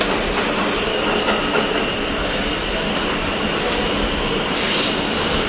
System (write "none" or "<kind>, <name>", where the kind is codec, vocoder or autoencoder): none